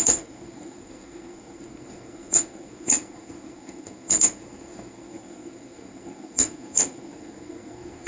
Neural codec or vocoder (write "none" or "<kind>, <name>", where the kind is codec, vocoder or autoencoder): codec, SNAC